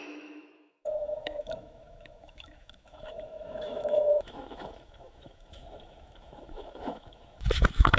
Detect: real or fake fake